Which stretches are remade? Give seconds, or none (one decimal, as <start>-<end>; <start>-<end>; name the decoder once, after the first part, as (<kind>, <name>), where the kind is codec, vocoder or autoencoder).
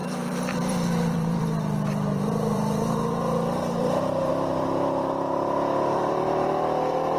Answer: 0.0-7.2 (vocoder, BigVGAN v2)